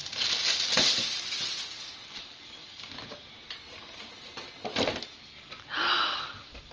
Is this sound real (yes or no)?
yes